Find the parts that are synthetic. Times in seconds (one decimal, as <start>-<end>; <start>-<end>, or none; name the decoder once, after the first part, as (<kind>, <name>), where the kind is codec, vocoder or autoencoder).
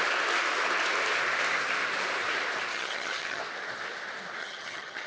2.7-3.4 (vocoder, HiFi-GAN); 4.4-5.1